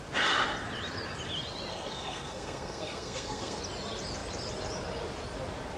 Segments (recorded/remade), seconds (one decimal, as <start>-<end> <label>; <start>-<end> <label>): 0.0-1.7 recorded; 1.7-3.6 remade; 3.6-5.8 recorded